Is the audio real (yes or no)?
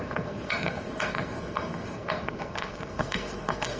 no